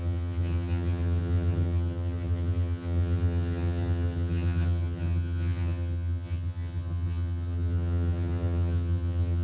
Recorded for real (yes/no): no